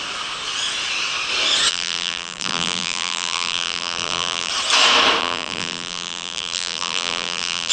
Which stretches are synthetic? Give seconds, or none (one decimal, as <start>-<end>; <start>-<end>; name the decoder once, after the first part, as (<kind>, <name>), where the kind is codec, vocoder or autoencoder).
1.7-4.5 (vocoder, BigVGAN v2); 5.2-7.7